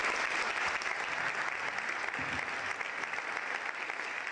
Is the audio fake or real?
real